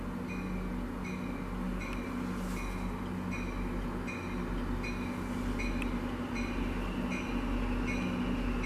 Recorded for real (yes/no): yes